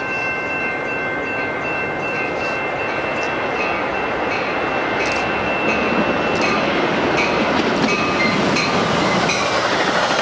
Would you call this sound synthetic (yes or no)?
no